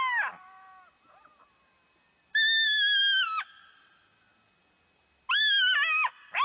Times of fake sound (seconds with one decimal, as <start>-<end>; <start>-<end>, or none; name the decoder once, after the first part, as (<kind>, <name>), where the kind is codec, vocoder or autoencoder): none